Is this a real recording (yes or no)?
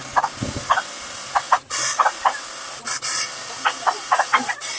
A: yes